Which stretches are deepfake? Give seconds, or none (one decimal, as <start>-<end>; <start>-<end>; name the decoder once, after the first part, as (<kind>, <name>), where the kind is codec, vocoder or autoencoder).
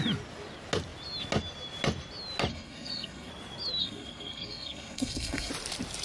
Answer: 2.5-3.3 (codec, SNAC); 3.8-5.5